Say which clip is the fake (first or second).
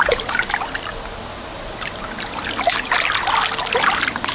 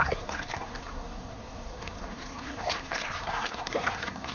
second